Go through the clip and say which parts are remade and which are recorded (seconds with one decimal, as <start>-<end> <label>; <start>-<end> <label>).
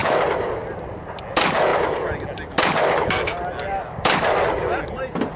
0.0-5.4 recorded